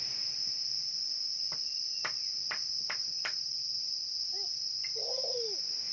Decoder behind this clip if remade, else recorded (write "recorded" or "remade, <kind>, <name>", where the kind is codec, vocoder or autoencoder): recorded